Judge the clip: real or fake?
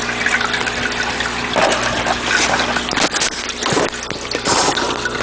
real